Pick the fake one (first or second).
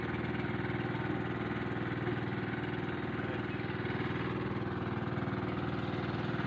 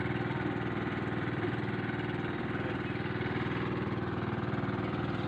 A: second